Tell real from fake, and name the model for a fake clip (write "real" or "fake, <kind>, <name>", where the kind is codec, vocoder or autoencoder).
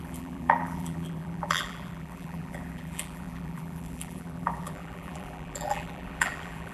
fake, vocoder, BigVGAN v2